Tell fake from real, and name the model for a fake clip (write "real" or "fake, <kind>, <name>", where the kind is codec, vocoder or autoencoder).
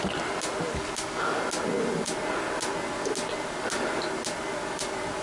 real